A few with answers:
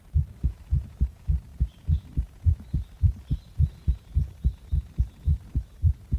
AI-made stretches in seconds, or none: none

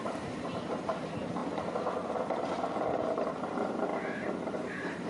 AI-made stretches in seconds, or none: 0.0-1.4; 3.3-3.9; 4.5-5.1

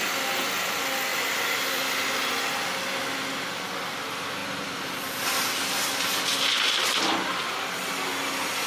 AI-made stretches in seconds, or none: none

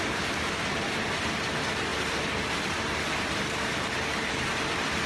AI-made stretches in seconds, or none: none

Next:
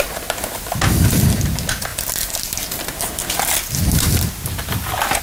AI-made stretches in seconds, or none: none

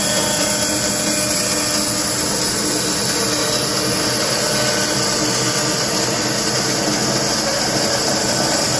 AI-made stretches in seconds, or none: 0.0-0.5; 7.5-8.8